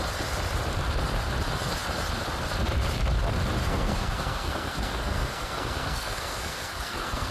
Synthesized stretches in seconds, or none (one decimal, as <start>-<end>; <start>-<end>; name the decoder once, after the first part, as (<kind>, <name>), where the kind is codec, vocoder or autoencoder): 3.6-7.3 (codec, SNAC)